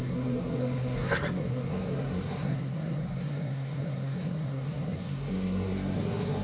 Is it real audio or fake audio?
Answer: fake